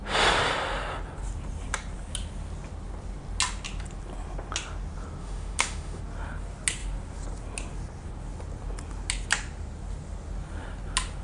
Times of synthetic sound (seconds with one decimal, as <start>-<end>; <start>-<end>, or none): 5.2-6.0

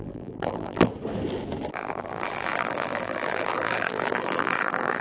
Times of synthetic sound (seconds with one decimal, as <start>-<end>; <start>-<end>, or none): 0.0-0.9; 1.7-5.0

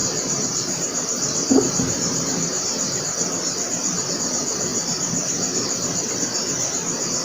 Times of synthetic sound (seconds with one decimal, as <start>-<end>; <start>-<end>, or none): 0.0-4.1; 4.7-6.1

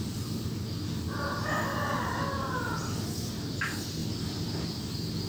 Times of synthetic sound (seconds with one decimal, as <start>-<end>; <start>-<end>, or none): none